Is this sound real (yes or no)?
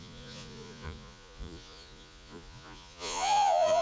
no